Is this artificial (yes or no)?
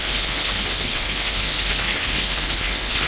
yes